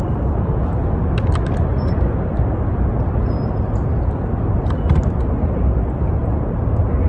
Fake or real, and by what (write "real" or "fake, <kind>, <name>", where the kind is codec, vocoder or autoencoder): real